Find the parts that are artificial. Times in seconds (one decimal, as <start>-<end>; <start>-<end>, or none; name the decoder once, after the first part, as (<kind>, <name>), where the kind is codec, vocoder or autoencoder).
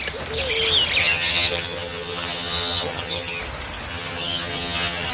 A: 1.0-3.4 (vocoder, HiFi-GAN); 3.9-5.1